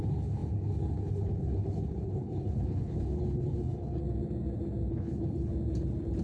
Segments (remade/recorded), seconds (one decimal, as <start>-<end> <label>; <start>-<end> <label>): 0.0-4.0 remade; 4.0-4.9 recorded; 4.9-5.5 remade; 5.5-6.2 recorded